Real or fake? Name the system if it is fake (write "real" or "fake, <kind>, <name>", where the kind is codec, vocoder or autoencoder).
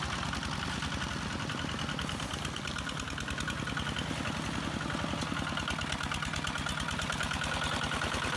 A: real